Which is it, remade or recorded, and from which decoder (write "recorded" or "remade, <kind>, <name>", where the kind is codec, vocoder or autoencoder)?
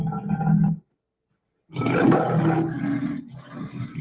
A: recorded